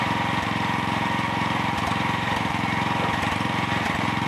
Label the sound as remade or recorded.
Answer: remade